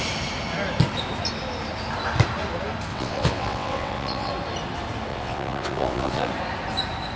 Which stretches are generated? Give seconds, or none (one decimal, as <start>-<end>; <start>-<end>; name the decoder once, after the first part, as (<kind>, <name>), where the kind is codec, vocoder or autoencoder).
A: 2.9-4.3 (vocoder, WaveNeXt); 5.1-6.3